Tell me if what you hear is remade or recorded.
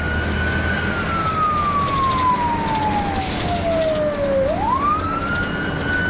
recorded